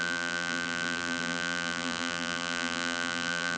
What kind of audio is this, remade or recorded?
remade